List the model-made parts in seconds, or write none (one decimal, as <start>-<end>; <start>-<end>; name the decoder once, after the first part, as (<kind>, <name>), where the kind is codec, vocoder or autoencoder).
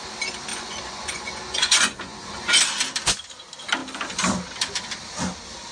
0.5-2.6 (vocoder, Vocos)